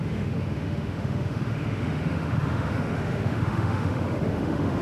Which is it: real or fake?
fake